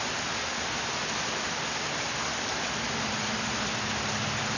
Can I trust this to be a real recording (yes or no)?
yes